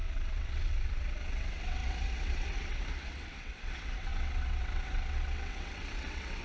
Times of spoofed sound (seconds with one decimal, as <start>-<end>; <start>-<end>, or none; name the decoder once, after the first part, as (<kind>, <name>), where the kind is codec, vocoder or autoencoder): 0.0-6.4 (vocoder, WaveNeXt)